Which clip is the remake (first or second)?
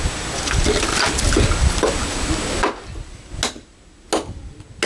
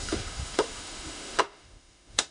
second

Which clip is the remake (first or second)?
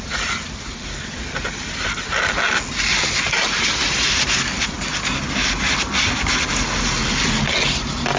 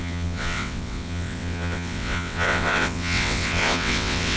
second